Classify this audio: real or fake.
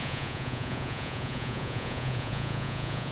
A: fake